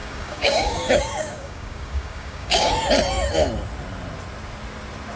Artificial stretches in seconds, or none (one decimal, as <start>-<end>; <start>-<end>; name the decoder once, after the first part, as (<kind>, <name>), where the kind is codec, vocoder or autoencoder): 0.0-2.7 (codec, DAC)